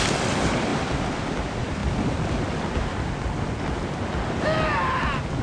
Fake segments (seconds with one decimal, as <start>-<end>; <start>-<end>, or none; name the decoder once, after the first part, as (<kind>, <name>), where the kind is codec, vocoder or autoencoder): none

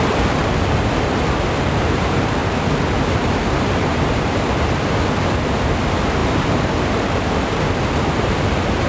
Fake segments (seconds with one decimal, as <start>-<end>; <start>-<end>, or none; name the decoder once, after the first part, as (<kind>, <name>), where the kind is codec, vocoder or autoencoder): 0.0-2.4 (vocoder, BigVGAN v2); 3.0-8.9

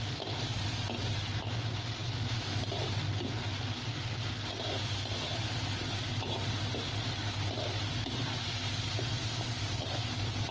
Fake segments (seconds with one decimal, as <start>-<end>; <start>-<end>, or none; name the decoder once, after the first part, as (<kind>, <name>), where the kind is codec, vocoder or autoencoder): none

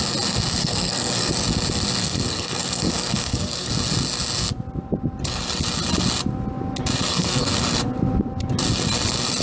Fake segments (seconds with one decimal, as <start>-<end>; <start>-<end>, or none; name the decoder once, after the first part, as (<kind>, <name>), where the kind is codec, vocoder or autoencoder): 0.6-1.3 (codec, SNAC); 2.0-3.7; 7.1-7.6

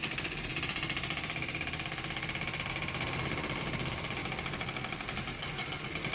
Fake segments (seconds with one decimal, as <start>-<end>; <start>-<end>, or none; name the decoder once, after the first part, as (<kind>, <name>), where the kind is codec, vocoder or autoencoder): none

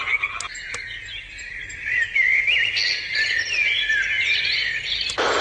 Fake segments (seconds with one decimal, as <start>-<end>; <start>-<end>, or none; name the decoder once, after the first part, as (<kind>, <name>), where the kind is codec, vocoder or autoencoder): none

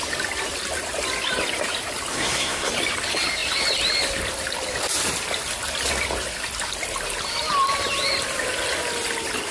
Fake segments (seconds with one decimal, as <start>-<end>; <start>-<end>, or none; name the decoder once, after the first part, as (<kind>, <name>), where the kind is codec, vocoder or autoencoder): 2.1-2.7 (codec, SNAC)